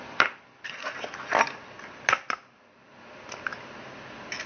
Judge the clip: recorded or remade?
recorded